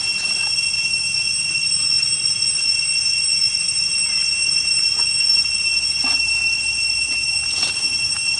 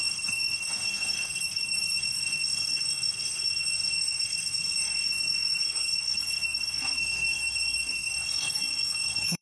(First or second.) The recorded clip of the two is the first